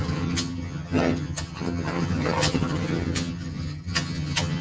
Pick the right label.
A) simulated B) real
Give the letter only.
A